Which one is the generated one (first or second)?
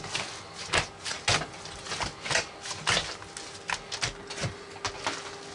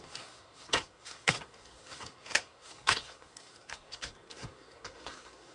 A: second